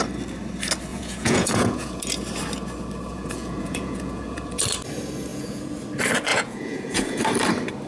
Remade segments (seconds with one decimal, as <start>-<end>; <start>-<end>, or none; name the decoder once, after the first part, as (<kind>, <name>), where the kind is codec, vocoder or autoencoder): 0.9-2.0 (vocoder, Vocos); 3.1-4.6; 5.3-5.8; 6.3-7.2